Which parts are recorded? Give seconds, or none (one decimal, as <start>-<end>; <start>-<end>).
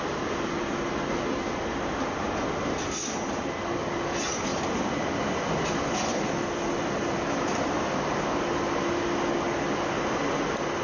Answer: 0.0-4.5; 6.3-10.8